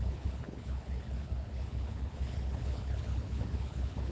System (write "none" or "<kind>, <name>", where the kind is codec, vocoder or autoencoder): codec, HILCodec